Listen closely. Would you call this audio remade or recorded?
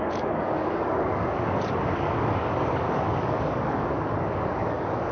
remade